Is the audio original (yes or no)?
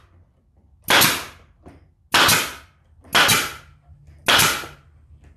yes